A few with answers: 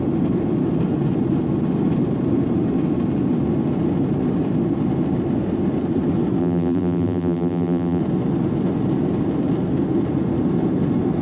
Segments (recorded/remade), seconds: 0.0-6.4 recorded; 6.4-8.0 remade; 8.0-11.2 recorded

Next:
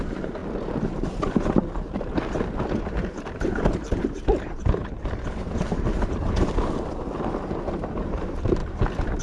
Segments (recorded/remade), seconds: 0.0-8.6 remade; 8.6-9.2 recorded

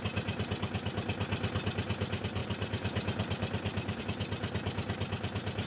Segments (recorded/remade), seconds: 0.0-2.4 recorded; 2.4-4.0 remade; 4.0-5.7 recorded

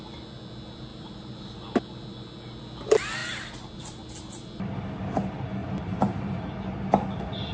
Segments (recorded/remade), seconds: 0.0-0.9 recorded; 0.9-1.5 remade; 1.5-5.6 recorded; 5.6-6.5 remade; 6.5-7.5 recorded

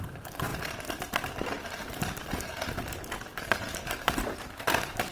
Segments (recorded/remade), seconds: 0.0-0.5 remade; 0.5-3.6 recorded; 3.6-5.1 remade

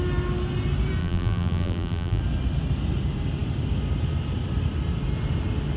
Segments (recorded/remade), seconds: 0.0-1.0 recorded; 1.0-2.2 remade; 2.2-5.8 recorded

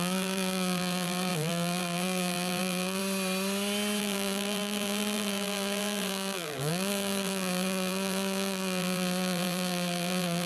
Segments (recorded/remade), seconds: 0.0-3.0 remade; 3.0-4.0 recorded; 4.0-10.5 remade

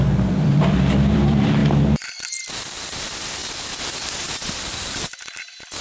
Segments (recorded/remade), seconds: 0.0-3.4 remade; 3.4-4.5 recorded; 4.5-5.8 remade